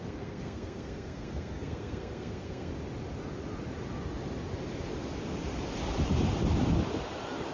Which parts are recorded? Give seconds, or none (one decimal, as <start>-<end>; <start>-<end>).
2.7-7.5